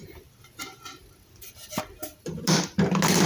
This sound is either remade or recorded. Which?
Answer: recorded